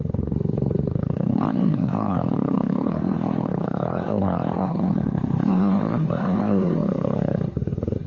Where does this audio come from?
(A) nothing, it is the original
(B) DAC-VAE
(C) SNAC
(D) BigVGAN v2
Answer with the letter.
C